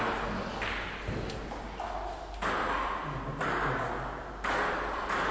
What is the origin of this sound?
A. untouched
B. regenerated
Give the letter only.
A